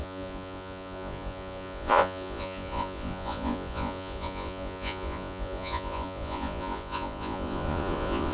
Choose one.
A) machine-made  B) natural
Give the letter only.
A